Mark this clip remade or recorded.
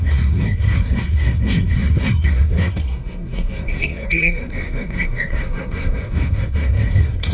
remade